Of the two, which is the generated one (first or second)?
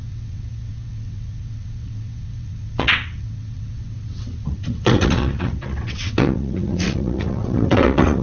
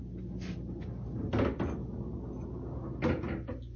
first